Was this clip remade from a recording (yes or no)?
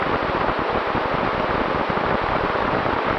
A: yes